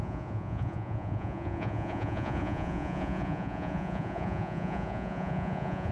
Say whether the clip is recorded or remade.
remade